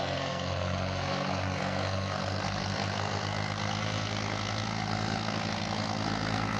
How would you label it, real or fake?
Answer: fake